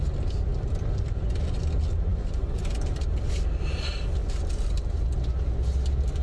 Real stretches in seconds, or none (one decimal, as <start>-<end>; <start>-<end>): 0.0-0.5; 1.6-2.1; 3.3-4.2; 5.2-6.2